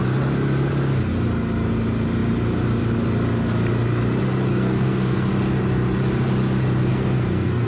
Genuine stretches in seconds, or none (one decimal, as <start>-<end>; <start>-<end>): 0.0-4.5; 5.3-6.9